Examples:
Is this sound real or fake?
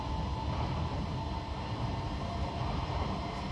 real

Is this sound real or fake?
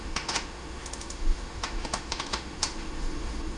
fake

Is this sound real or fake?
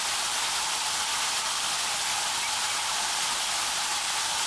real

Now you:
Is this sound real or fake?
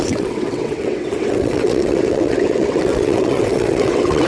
fake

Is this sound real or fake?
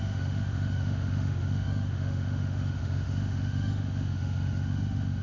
fake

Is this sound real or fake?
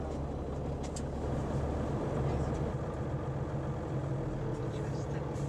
real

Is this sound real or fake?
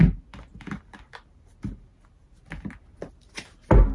real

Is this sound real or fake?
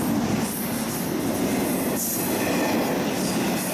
real